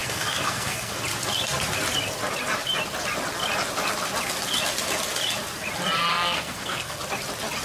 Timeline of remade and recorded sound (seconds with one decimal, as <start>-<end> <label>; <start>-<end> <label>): 0.0-1.0 remade; 1.0-6.1 recorded; 6.1-7.0 remade; 7.0-7.6 recorded

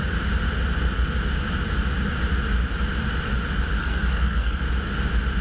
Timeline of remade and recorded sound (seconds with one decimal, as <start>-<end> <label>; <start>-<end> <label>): 0.0-3.8 recorded; 3.8-4.6 remade; 4.6-5.4 recorded

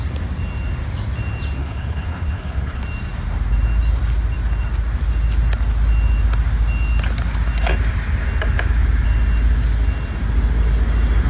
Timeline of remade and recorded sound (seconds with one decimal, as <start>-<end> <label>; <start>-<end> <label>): 0.0-1.6 recorded; 1.6-2.8 remade; 2.8-11.3 recorded

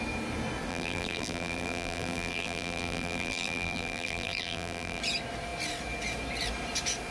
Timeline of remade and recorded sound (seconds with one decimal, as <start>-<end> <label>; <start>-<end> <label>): 0.0-0.7 recorded; 0.7-5.0 remade; 5.0-7.1 recorded

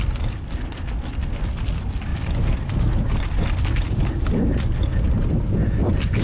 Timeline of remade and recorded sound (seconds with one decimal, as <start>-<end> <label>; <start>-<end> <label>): 0.0-2.1 recorded; 2.1-4.4 remade; 4.4-6.2 recorded